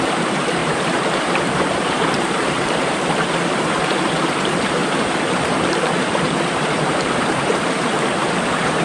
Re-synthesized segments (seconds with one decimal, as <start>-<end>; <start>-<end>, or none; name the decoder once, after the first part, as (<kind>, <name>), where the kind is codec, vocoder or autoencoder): 0.0-8.8 (vocoder, BigVGAN v2)